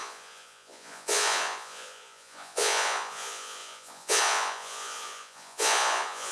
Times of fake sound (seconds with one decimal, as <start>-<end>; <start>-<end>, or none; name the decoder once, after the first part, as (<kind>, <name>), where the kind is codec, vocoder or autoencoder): 0.0-6.3 (vocoder, Vocos)